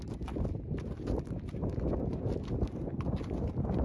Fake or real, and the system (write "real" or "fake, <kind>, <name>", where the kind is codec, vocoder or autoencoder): real